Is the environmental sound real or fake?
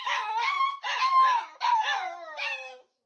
fake